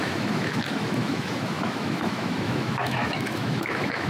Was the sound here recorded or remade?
remade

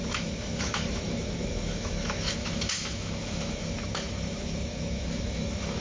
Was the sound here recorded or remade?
remade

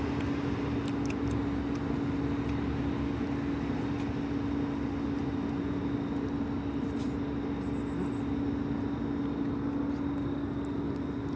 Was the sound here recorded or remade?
recorded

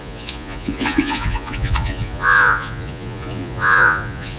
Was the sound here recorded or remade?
remade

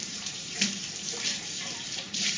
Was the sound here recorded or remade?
remade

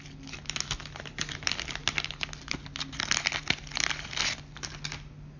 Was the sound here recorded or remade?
recorded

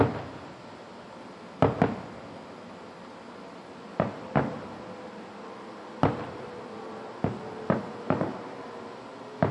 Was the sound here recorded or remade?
recorded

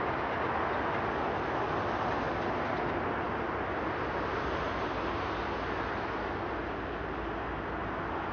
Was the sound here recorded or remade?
recorded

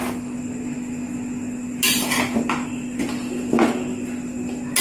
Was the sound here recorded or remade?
recorded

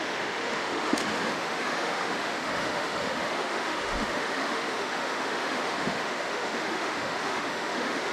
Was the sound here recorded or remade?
remade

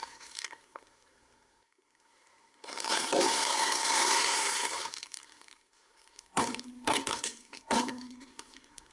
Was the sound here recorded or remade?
remade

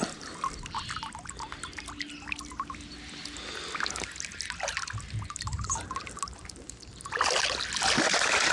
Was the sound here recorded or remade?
recorded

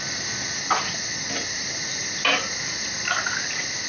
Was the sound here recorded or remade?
recorded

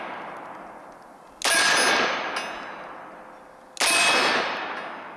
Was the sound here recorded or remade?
recorded